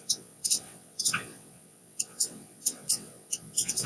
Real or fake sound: fake